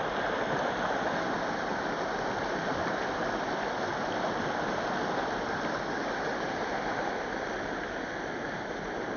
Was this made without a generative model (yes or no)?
yes